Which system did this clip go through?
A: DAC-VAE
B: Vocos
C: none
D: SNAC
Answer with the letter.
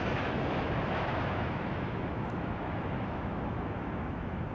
A